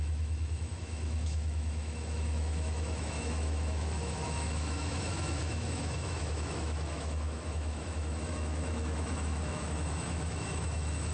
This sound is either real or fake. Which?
fake